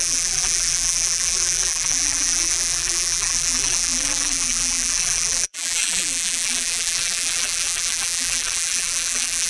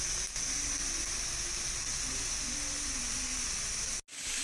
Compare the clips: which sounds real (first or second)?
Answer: second